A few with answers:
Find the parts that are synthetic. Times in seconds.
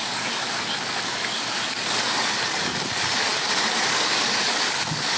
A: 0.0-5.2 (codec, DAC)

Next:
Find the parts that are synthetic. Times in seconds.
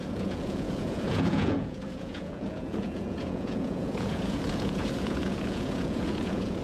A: 0.0-6.6 (vocoder, Vocos)